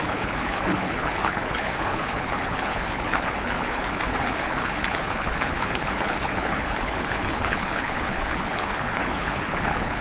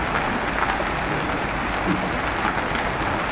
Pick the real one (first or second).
second